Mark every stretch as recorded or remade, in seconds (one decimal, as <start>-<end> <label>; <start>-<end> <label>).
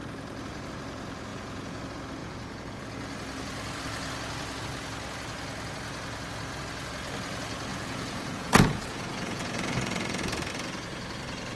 0.0-1.3 recorded; 1.3-1.8 remade; 1.8-2.2 recorded; 2.2-2.8 remade; 2.8-7.7 recorded; 7.7-10.5 remade; 10.5-11.6 recorded